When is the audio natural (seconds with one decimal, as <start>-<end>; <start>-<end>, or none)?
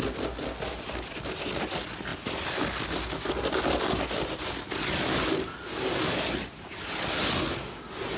0.0-2.1; 3.8-8.2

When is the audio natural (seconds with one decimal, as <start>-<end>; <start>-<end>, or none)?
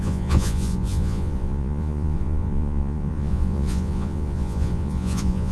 none